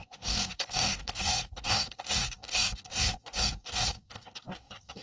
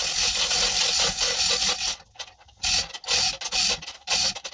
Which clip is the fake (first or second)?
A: first